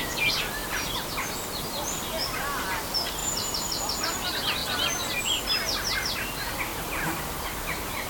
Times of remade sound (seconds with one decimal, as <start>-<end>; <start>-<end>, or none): 3.2-4.0; 6.7-8.1